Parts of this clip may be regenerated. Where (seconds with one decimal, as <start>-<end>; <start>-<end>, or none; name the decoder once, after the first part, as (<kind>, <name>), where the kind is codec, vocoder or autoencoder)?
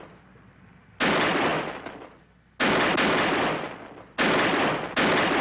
none